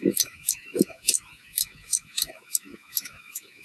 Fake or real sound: fake